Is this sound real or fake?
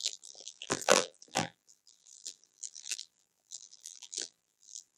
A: fake